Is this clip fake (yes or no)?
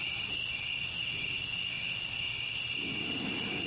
no